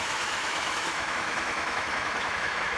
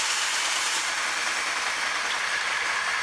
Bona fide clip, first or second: second